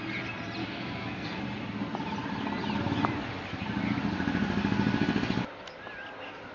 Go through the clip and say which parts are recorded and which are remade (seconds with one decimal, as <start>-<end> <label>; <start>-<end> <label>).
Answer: 0.0-0.6 recorded; 0.6-1.4 remade; 1.4-6.5 recorded